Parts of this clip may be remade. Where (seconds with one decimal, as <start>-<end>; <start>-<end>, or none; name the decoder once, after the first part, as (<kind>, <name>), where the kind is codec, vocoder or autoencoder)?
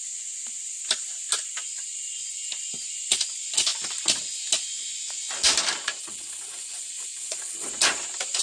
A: 6.0-7.7 (vocoder, WaveNeXt)